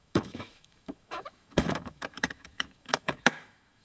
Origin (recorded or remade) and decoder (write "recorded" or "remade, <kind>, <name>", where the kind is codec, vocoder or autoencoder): remade, autoencoder, DAC-VAE